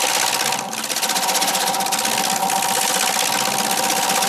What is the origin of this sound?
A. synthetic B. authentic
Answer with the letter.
B